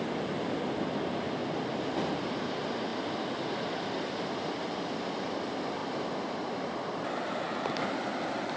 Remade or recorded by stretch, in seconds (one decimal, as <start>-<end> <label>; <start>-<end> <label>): 0.0-1.4 remade; 1.4-2.5 recorded; 2.5-2.9 remade; 2.9-3.8 recorded; 3.8-5.8 remade; 5.8-6.3 recorded; 6.3-8.6 remade